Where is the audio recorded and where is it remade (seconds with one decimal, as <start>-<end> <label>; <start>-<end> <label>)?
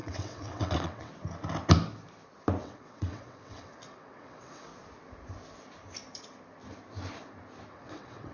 0.0-1.1 remade; 1.1-2.6 recorded; 2.6-4.7 remade; 4.7-7.7 recorded; 7.7-8.3 remade